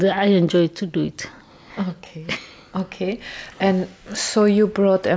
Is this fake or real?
real